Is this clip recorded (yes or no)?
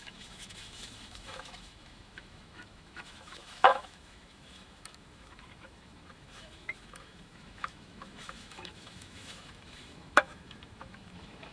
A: no